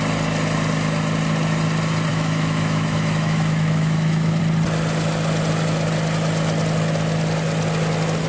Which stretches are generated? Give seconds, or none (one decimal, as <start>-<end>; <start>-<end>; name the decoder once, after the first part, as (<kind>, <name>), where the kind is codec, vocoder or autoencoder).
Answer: 2.1-4.4 (autoencoder, DAC-VAE)